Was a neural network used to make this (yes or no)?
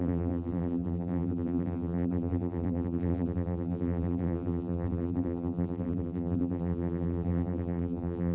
yes